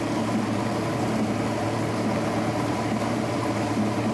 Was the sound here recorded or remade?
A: recorded